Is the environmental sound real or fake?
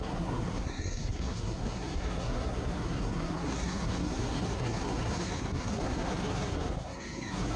fake